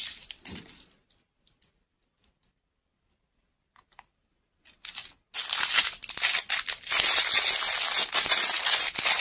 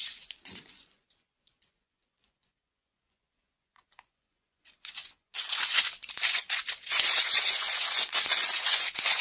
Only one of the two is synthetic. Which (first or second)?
second